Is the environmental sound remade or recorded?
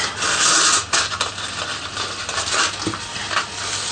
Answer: recorded